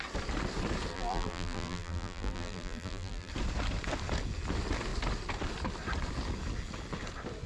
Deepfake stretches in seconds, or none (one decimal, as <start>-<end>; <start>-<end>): 0.9-3.3